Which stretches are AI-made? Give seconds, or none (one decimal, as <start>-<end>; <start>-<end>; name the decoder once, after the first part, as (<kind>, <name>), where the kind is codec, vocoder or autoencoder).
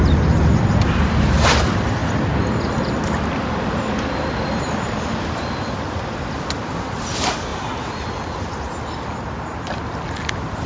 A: none